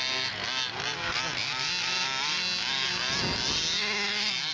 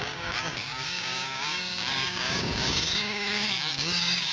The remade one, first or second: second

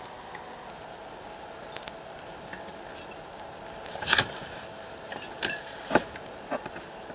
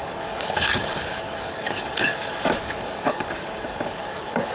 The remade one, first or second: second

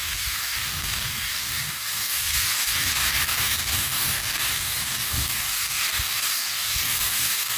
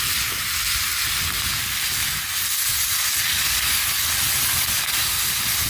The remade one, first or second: first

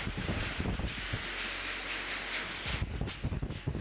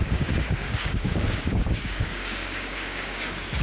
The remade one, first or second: second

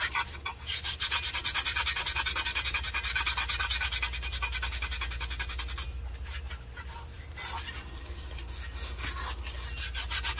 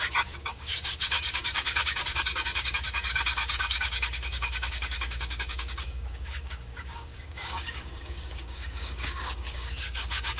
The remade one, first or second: second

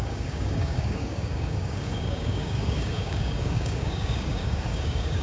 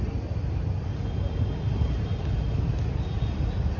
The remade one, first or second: first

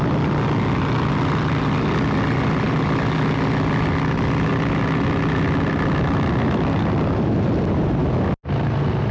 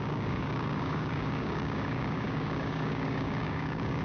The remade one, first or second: second